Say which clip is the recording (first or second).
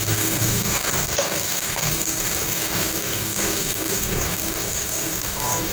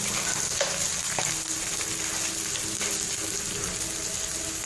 second